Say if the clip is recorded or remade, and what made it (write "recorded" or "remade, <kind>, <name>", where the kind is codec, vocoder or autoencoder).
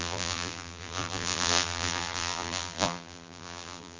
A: remade, vocoder, BigVGAN v2